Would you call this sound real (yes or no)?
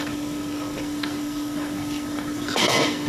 no